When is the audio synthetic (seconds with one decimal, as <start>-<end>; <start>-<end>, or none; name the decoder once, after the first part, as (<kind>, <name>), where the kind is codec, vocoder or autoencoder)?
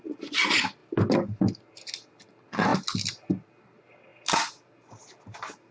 none